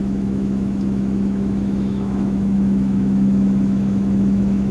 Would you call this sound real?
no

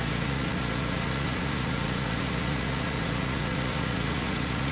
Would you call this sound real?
no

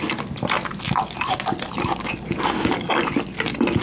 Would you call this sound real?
yes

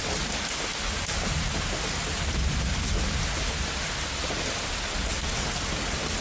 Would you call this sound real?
yes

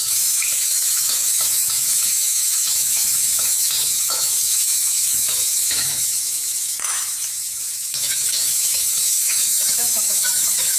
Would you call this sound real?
no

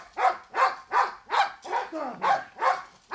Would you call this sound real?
yes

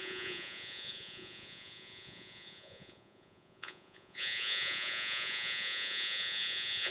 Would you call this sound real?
no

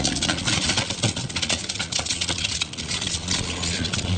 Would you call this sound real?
no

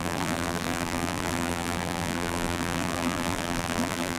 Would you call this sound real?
no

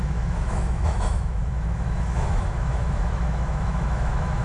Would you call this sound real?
no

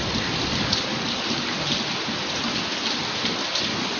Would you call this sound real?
no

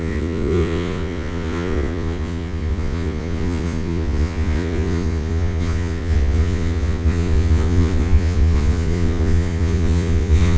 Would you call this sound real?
no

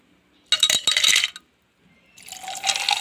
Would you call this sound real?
yes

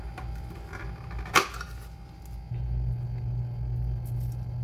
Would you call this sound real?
yes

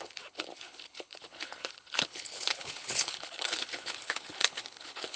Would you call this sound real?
no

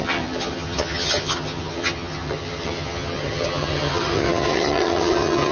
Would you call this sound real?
no